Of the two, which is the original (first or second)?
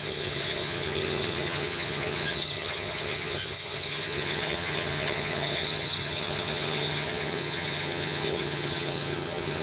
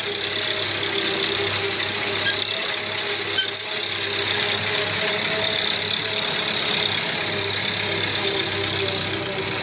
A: second